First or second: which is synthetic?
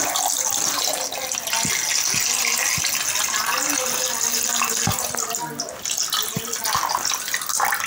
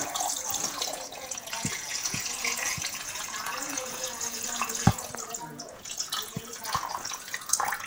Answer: second